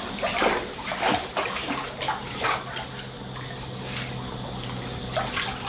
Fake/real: real